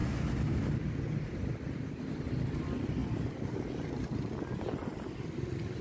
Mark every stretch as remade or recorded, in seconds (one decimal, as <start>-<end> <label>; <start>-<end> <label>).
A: 0.0-5.8 recorded